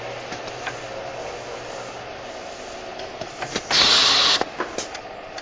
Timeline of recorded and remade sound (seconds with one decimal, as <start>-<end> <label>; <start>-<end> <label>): 0.0-5.4 recorded